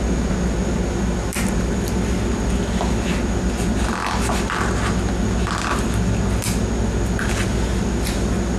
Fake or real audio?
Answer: real